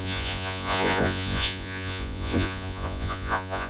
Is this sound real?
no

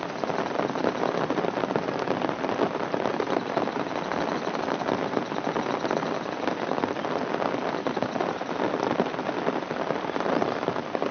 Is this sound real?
yes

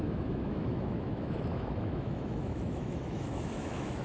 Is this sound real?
no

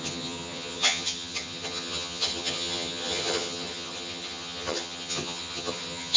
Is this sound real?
no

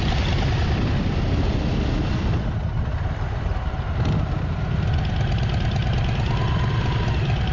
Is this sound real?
yes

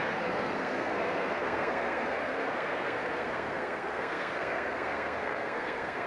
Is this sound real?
no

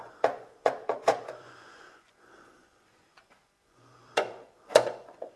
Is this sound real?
no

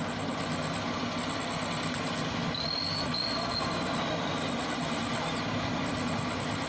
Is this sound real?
yes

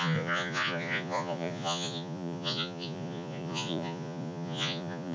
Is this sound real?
no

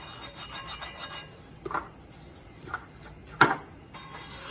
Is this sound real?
yes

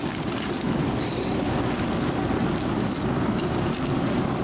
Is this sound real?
yes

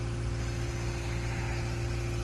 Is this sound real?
yes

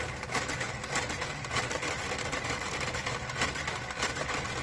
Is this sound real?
yes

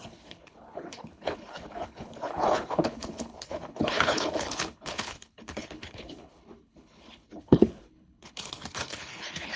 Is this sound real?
no